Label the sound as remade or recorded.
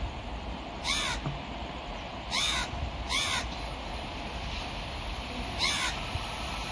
recorded